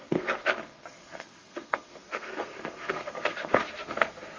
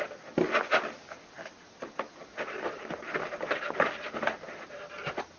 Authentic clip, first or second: second